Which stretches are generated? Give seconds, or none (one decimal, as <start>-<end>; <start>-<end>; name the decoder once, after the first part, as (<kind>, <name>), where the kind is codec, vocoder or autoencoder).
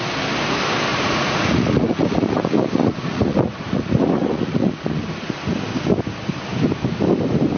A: 0.9-5.2 (vocoder, Vocos)